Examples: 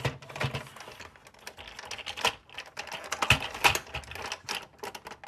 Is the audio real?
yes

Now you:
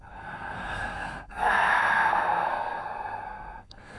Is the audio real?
no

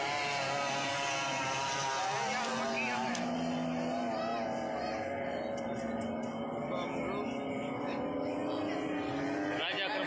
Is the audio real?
yes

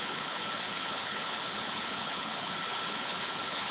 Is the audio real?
no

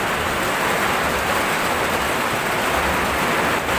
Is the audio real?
yes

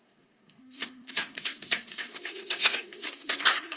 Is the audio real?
no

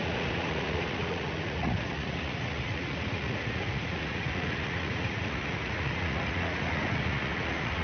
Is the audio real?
no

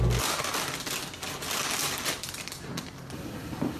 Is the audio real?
yes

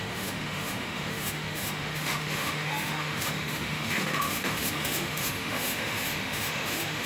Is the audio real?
no